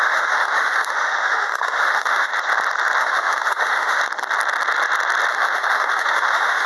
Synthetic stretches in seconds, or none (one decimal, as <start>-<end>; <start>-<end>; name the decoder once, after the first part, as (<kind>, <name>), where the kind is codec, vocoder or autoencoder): 0.0-2.3 (autoencoder, DAC-VAE); 3.0-4.0; 5.3-6.7